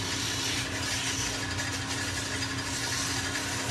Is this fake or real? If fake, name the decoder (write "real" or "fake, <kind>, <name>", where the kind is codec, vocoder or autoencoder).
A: real